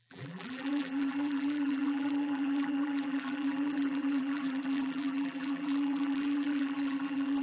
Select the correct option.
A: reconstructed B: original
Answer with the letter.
A